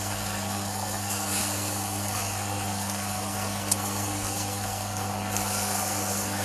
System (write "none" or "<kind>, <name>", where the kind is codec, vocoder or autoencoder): codec, SNAC